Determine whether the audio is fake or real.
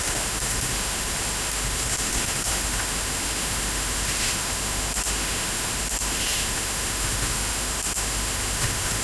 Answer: fake